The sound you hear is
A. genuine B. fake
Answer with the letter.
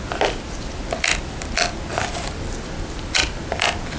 A